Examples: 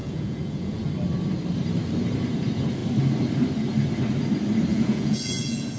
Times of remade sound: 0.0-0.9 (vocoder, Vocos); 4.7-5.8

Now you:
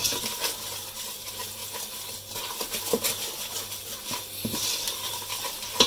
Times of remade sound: none

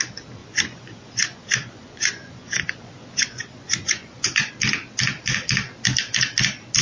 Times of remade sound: 0.4-4.5 (vocoder, Vocos)

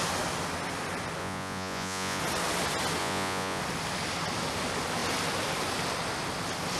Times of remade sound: 1.2-2.2 (vocoder, Vocos); 3.0-3.6

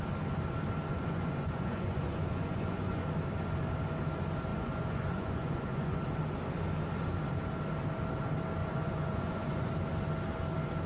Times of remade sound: 0.9-3.0 (vocoder, Vocos); 4.5-6.0; 8.6-9.7